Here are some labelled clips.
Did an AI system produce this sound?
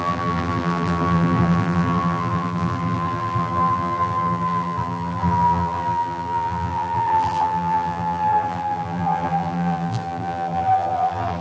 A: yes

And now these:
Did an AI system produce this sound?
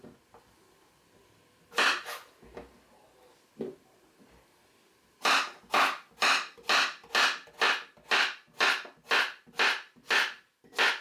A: no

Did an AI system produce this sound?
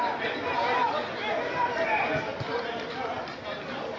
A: no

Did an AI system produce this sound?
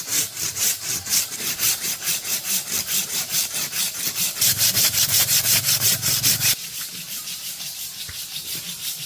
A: yes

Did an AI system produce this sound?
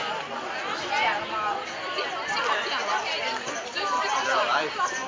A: no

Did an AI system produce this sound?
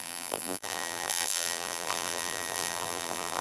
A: yes